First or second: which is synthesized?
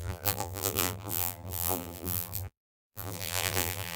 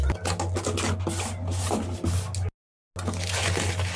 first